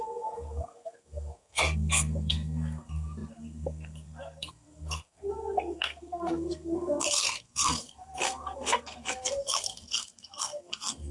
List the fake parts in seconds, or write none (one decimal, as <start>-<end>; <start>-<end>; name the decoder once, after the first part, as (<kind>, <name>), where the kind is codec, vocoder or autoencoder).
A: 0.0-11.1 (codec, SNAC)

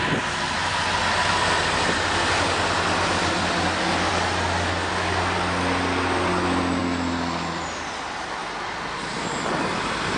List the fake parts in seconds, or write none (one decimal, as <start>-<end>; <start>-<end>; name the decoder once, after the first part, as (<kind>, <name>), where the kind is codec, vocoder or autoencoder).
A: none

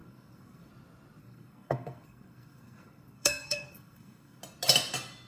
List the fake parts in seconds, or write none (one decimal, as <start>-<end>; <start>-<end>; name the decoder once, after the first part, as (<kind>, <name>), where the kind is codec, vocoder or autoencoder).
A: 0.0-0.7 (codec, SNAC); 1.2-4.4